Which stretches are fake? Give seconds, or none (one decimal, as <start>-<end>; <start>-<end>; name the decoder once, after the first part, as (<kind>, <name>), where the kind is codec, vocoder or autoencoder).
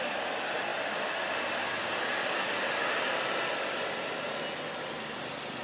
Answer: none